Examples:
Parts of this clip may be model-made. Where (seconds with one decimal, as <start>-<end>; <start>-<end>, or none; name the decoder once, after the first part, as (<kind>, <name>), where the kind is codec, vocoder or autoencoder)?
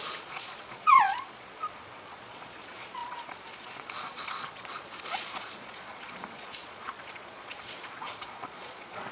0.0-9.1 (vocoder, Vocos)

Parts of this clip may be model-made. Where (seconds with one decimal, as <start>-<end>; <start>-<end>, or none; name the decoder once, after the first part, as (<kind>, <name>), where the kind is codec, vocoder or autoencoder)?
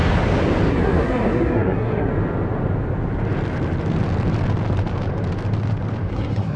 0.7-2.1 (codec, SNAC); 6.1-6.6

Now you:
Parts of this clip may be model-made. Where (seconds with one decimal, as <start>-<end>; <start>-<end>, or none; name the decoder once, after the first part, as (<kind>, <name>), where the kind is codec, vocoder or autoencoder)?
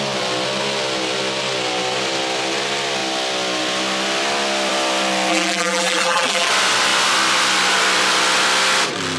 5.3-6.5 (vocoder, BigVGAN v2)